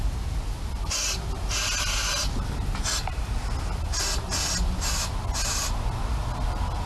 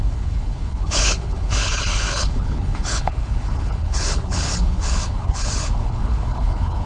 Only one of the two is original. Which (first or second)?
first